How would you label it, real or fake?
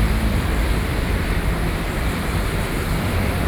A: fake